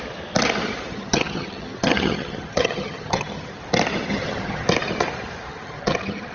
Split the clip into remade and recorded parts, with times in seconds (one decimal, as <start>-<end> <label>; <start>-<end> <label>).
0.0-0.9 recorded; 0.9-3.6 remade; 3.6-4.1 recorded; 4.1-4.7 remade; 4.7-5.5 recorded; 5.5-6.3 remade